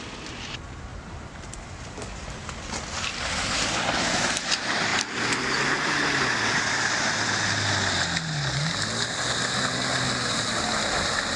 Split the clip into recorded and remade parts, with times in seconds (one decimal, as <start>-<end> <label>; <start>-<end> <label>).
0.0-11.4 recorded